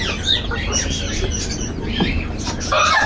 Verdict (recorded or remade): recorded